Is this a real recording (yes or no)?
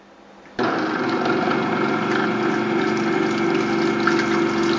yes